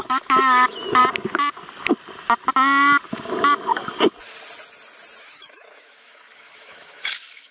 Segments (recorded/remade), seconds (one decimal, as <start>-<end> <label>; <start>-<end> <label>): 0.0-1.0 remade; 1.0-5.2 recorded; 5.2-7.5 remade